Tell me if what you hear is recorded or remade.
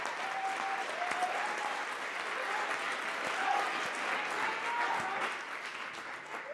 recorded